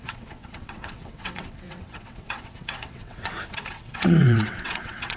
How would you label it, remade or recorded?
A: remade